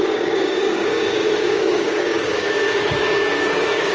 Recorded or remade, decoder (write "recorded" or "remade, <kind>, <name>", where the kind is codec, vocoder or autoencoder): remade, codec, DAC